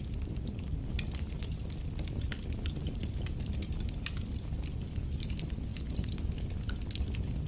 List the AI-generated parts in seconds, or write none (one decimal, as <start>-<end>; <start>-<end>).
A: none